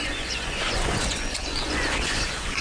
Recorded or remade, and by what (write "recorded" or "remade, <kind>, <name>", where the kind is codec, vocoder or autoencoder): remade, vocoder, Vocos